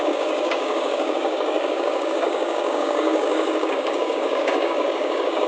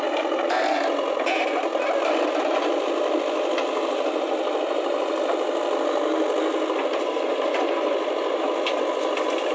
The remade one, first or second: first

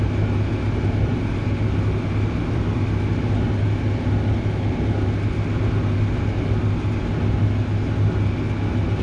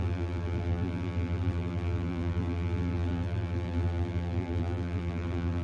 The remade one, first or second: second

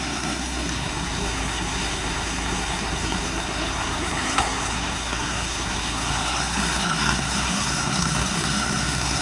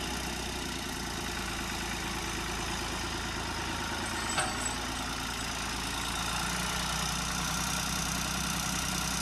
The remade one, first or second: first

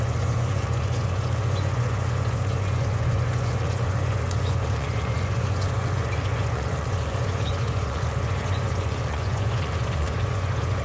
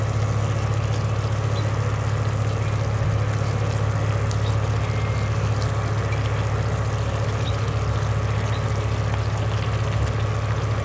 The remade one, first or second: first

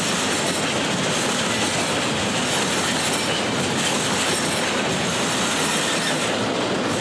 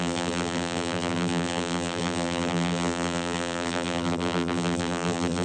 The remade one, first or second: second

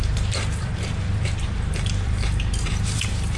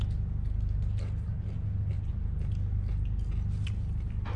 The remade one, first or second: first